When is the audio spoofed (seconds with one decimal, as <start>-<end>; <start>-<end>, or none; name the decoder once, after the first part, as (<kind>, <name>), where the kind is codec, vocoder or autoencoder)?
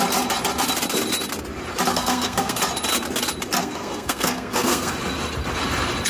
1.9-2.6 (codec, SNAC); 3.6-4.9